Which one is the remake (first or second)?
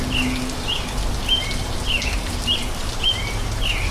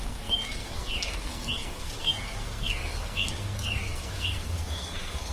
second